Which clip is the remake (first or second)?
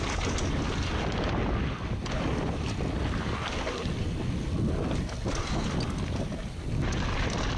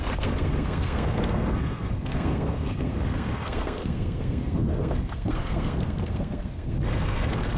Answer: second